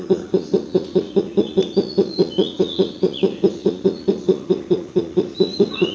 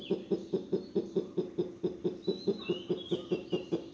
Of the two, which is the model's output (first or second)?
first